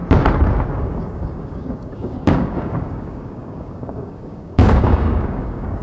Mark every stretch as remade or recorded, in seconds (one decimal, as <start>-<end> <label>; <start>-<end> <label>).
0.0-0.8 recorded; 0.8-5.8 remade